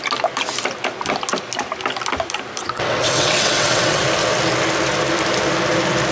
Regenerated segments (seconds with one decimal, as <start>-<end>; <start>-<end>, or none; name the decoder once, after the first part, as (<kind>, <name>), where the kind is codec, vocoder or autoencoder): 2.6-4.0 (vocoder, WaveNeXt)